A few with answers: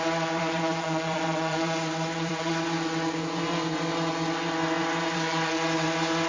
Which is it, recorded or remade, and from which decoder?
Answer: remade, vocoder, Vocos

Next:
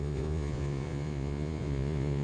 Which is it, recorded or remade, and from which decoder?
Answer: remade, vocoder, Vocos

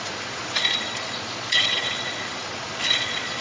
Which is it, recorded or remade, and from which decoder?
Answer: remade, vocoder, Vocos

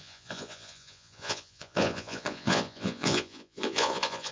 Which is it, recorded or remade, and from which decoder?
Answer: remade, vocoder, Vocos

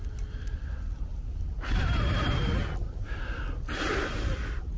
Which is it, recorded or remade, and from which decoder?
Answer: recorded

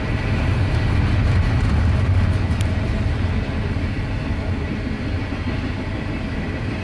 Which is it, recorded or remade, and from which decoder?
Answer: recorded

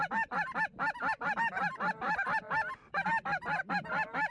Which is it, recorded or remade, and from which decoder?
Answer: recorded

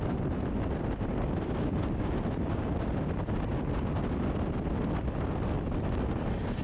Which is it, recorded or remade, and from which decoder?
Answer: recorded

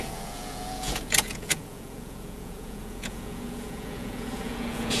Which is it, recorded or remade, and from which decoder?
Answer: remade, vocoder, Vocos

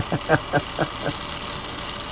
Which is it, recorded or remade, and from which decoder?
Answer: recorded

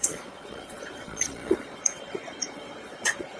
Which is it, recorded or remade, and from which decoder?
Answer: remade, vocoder, Vocos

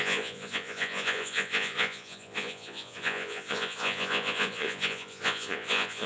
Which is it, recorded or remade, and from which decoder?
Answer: remade, vocoder, Vocos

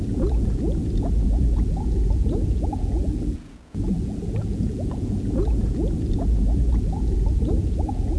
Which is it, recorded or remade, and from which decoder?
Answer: remade, vocoder, Vocos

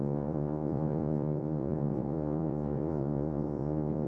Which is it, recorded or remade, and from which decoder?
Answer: remade, vocoder, Vocos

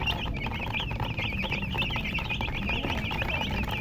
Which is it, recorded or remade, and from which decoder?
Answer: recorded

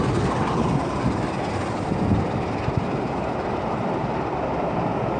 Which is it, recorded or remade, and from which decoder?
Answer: recorded